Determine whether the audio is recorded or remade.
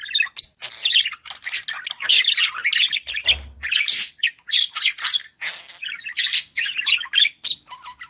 recorded